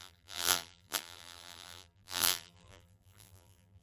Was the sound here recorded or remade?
remade